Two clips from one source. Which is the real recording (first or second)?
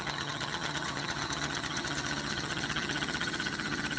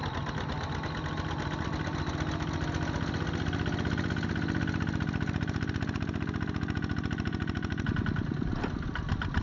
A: second